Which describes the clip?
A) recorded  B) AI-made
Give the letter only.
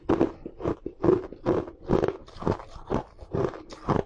A